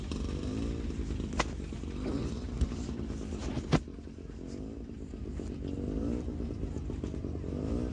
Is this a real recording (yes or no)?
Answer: yes